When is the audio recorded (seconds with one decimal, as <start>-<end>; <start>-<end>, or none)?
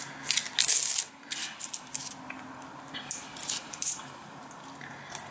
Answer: 0.0-1.4; 2.2-3.4; 4.5-5.3